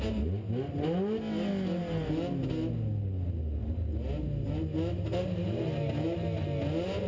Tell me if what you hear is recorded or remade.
recorded